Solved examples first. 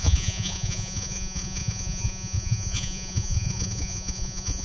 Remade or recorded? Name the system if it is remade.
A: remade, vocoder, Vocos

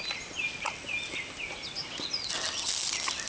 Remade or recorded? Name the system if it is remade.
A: recorded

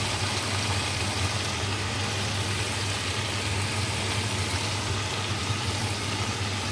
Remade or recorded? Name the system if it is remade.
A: recorded